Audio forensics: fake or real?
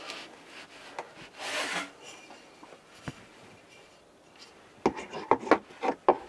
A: real